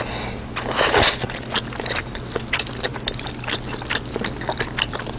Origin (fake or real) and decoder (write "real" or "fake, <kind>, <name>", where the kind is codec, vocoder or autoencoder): real